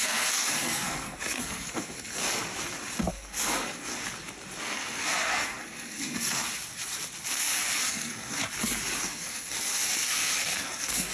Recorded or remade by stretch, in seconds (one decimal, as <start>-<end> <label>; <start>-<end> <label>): 0.0-2.2 remade; 2.2-3.1 recorded; 3.1-3.9 remade; 3.9-4.6 recorded; 4.6-6.5 remade; 6.5-7.3 recorded; 7.3-8.4 remade; 8.4-9.0 recorded; 9.0-11.1 remade